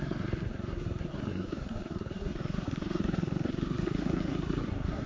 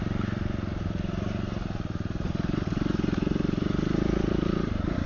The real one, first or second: second